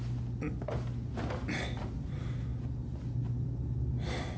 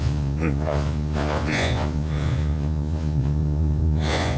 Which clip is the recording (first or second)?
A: first